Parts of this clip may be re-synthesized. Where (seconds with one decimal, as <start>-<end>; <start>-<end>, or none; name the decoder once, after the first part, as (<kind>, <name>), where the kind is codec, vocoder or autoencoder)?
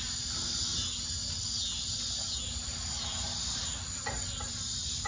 none